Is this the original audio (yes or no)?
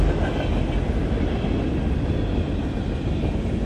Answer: yes